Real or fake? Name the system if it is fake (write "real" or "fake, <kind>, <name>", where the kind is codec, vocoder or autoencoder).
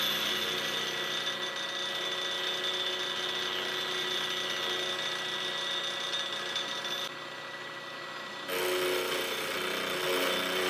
real